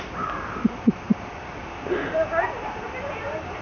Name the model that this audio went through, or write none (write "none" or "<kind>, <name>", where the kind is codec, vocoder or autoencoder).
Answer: none